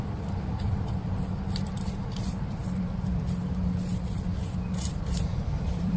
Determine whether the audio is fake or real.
fake